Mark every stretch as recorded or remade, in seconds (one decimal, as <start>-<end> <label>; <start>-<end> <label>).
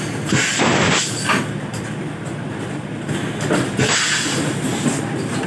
0.0-1.7 recorded; 1.7-5.0 remade; 5.0-5.5 recorded